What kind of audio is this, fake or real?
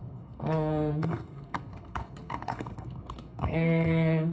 fake